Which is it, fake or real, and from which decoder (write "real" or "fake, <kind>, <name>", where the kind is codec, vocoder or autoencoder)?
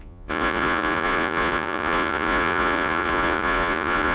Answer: fake, vocoder, Vocos